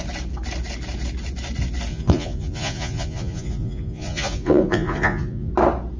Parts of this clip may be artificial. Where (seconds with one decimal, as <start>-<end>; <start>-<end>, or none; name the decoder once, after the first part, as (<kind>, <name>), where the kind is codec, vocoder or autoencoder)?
1.9-5.5 (vocoder, Vocos)